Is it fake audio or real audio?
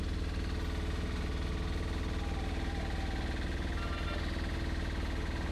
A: real